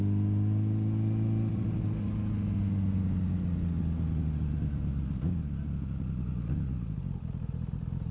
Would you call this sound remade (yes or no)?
no